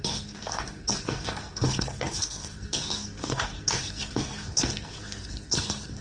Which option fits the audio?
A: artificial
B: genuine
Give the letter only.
A